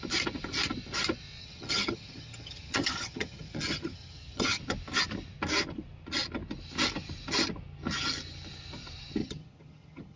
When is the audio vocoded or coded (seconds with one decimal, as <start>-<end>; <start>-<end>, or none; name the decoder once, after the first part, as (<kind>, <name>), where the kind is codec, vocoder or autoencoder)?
1.4-4.6 (vocoder, HiFi-GAN); 9.2-10.2